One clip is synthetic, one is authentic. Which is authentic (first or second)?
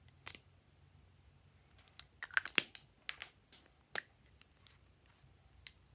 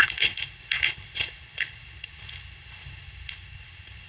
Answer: first